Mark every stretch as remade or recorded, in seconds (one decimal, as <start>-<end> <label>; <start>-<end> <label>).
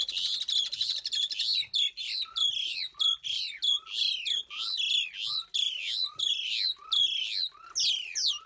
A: 0.0-8.5 recorded